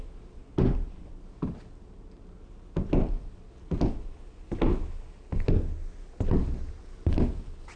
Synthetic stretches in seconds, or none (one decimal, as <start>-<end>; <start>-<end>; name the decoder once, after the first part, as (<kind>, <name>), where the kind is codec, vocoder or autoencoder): none